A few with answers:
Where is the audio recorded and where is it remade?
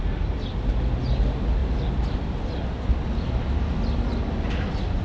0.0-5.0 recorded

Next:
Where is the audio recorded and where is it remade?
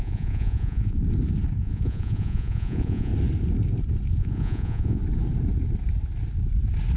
0.0-1.0 remade; 1.0-1.6 recorded; 1.6-3.1 remade; 3.1-4.1 recorded; 4.1-5.0 remade; 5.0-7.0 recorded